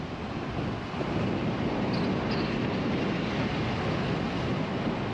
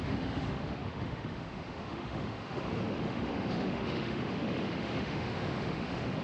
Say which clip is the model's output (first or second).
second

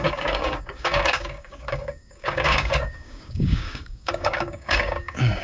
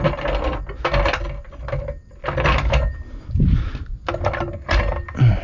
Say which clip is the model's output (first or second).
first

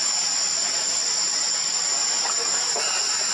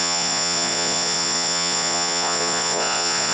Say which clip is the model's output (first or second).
second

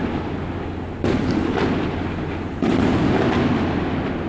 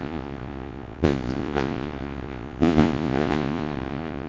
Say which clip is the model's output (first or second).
second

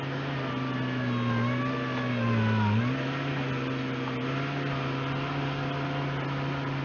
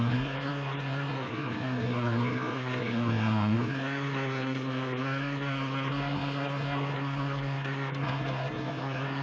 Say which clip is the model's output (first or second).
second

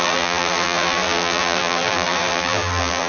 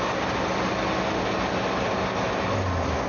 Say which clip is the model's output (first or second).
first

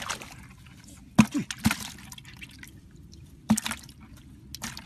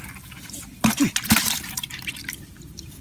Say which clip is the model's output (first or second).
second